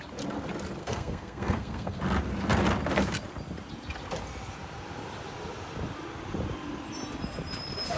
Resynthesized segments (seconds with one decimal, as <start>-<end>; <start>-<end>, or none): 0.8-2.0